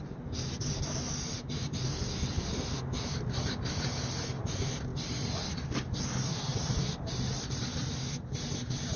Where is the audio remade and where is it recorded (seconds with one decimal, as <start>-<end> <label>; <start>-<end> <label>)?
0.0-9.0 recorded